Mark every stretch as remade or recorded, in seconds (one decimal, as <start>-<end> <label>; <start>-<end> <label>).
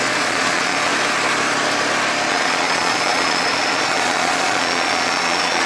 0.0-0.9 remade; 0.9-2.3 recorded; 2.3-5.7 remade